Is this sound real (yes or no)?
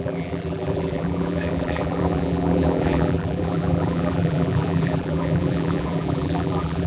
no